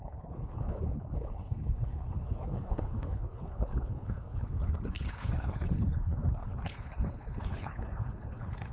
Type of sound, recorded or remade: remade